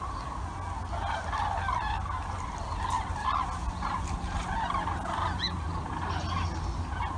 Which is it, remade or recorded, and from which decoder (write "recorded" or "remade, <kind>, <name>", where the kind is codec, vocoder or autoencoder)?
recorded